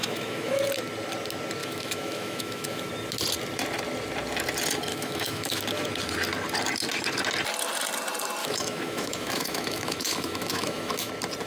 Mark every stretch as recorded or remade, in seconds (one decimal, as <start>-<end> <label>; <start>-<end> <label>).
0.0-0.6 remade; 0.6-1.6 recorded; 1.6-2.9 remade; 2.9-4.9 recorded; 4.9-5.6 remade; 5.6-8.4 recorded; 8.4-11.1 remade; 11.1-11.5 recorded